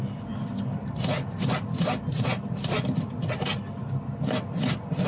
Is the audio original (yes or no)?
yes